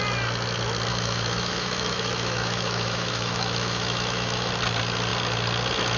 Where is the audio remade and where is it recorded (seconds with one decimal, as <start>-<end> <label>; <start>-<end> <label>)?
0.0-0.9 recorded; 0.9-4.5 remade; 4.5-6.0 recorded